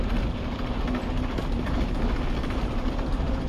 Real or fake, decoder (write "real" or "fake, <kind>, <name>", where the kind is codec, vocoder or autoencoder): real